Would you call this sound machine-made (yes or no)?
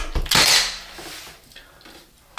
no